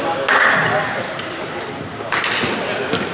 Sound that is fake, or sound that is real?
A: real